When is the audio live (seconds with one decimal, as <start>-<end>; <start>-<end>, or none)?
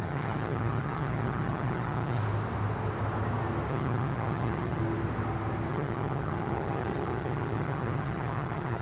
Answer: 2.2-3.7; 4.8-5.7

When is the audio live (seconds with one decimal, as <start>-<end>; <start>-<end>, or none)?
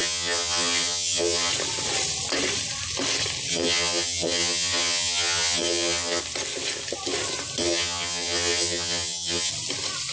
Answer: 1.5-3.5; 6.2-7.6; 9.5-10.1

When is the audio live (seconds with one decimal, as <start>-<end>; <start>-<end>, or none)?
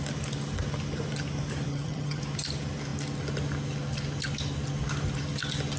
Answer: 0.0-1.7; 2.2-5.8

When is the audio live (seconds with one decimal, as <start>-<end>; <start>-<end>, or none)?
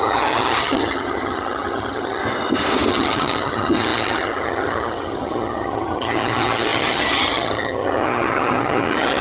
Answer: 2.2-2.9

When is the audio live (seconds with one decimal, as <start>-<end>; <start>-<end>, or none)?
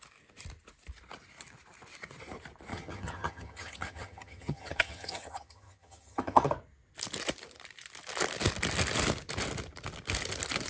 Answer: 0.0-2.7; 6.5-10.7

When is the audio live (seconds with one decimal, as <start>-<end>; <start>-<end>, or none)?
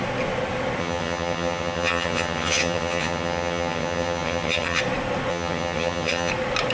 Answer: 0.0-0.8; 4.8-5.3; 6.3-6.7